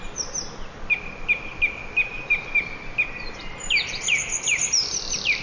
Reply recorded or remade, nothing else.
recorded